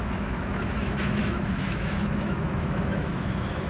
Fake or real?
fake